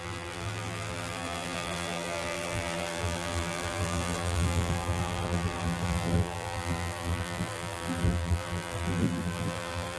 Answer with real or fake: fake